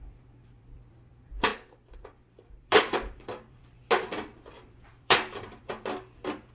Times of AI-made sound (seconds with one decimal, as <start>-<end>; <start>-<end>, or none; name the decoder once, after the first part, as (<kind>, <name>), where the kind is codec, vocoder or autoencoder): 0.0-3.8 (vocoder, BigVGAN v2); 4.5-6.5